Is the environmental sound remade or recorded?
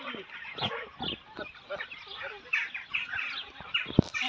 recorded